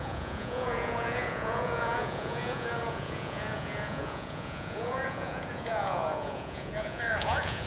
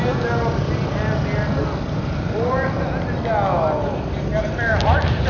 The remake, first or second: first